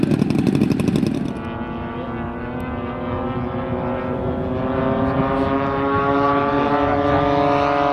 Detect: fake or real real